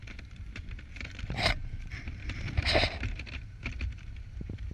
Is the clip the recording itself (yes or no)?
no